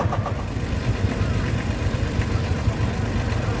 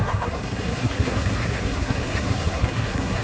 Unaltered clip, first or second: first